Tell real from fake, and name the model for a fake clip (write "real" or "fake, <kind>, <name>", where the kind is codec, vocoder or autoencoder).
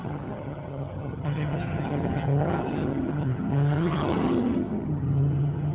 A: fake, vocoder, HiFi-GAN